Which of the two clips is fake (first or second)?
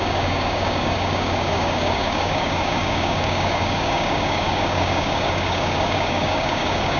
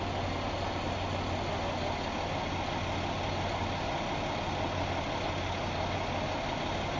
first